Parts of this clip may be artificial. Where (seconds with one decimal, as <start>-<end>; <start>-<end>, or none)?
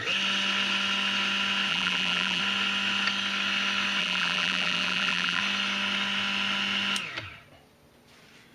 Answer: 1.7-2.4; 4.0-5.4